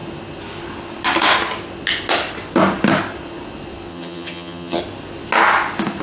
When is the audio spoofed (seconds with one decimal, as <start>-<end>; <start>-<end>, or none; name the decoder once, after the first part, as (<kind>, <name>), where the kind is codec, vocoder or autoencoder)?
3.9-4.8 (vocoder, HiFi-GAN)